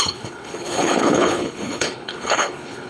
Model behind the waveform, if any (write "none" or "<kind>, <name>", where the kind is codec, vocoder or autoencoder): codec, HILCodec